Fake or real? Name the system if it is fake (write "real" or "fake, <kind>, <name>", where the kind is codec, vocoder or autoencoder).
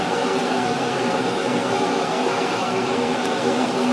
fake, codec, SNAC